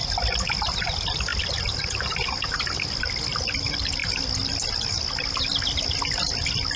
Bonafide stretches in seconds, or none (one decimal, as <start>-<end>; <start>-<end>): 0.0-6.8